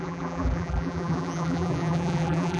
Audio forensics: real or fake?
fake